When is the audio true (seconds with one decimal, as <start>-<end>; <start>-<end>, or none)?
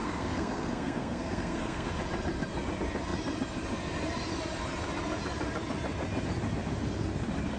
1.9-7.6